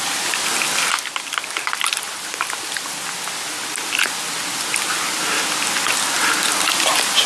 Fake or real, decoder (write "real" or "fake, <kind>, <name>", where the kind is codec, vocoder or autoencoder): real